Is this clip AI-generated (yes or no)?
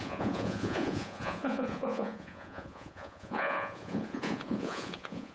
yes